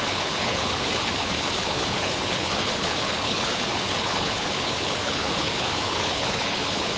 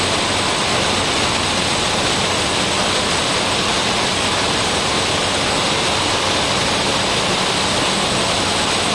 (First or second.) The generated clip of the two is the first